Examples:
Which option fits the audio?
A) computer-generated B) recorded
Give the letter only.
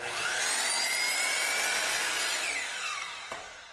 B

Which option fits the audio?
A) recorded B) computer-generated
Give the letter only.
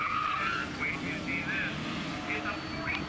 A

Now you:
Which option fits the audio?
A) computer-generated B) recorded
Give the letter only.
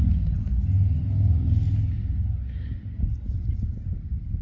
B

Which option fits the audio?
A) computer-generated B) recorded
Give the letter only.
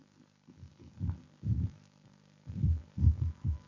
A